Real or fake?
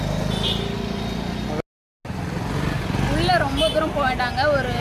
real